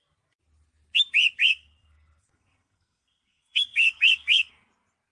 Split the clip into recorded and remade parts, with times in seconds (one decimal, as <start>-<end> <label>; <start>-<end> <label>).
0.0-1.4 recorded; 1.4-4.5 remade; 4.5-5.1 recorded